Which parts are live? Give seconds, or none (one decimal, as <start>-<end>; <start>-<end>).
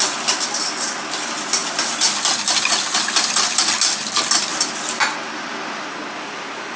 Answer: 0.0-1.6; 2.3-6.8